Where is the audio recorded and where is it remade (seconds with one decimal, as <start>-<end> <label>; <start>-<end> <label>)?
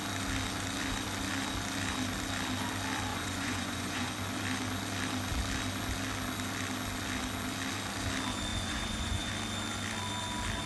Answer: 0.0-3.1 recorded; 3.1-4.1 remade; 4.1-8.5 recorded; 8.5-9.3 remade; 9.3-10.7 recorded